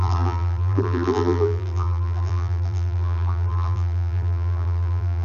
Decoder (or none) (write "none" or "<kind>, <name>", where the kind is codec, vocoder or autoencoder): vocoder, BigVGAN v2